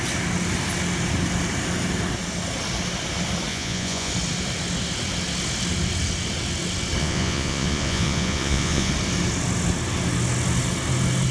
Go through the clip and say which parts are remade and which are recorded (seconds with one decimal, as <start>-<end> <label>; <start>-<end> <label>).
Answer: 0.0-3.5 recorded; 3.5-4.1 remade; 4.1-7.0 recorded; 7.0-8.9 remade; 8.9-11.3 recorded